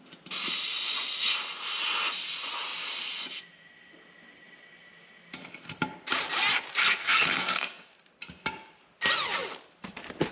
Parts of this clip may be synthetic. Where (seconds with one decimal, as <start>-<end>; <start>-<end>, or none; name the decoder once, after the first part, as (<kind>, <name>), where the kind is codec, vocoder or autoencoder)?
6.8-7.9 (codec, SNAC)